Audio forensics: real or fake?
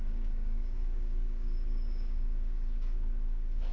fake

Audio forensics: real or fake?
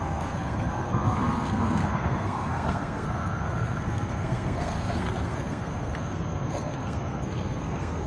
fake